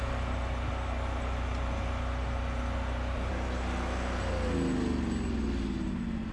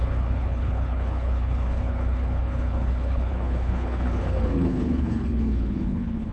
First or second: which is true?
first